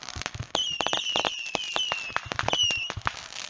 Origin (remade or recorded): recorded